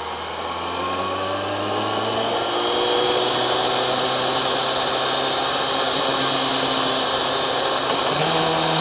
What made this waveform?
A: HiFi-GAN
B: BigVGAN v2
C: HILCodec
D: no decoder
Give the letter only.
D